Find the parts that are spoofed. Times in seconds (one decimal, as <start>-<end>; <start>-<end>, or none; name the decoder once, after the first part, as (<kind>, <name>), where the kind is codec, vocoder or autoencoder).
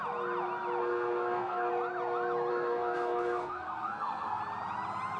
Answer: 0.8-1.7 (codec, SNAC); 2.5-4.4